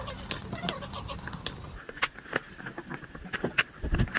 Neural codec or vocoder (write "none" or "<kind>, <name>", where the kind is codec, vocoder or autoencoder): none